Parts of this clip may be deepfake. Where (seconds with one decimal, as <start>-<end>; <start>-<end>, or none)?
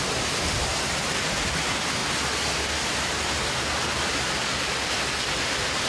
none